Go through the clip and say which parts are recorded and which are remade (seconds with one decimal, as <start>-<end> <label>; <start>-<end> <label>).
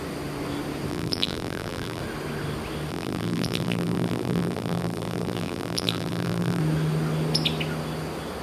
0.0-0.9 recorded; 0.9-2.0 remade; 2.0-2.9 recorded; 2.9-6.6 remade; 6.6-8.4 recorded